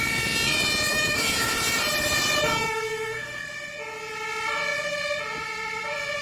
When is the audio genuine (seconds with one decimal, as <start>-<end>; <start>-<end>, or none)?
0.0-0.9; 1.6-2.6; 3.4-6.2

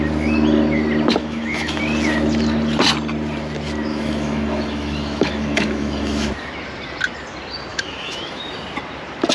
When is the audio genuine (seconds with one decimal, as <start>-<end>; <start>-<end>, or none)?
0.0-1.2; 1.8-3.9; 6.3-7.7; 8.4-9.3